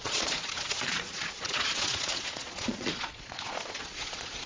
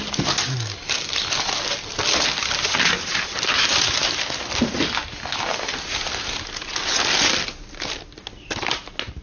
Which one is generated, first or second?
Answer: first